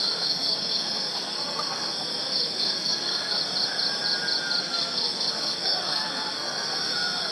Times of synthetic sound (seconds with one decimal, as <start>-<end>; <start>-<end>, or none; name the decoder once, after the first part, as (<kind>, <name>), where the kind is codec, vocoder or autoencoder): 0.0-3.4 (codec, SNAC); 4.6-7.3